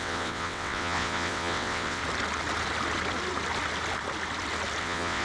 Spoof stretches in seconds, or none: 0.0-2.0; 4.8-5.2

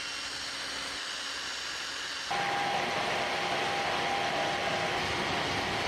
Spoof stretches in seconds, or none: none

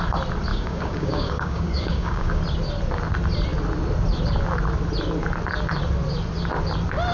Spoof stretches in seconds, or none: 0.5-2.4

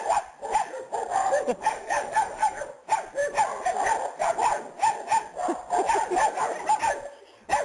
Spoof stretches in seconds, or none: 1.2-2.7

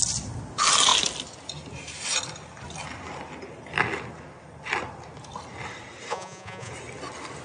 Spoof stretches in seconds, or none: 6.1-6.7

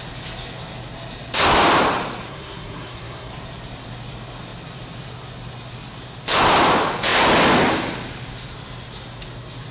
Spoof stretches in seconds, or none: 2.3-3.3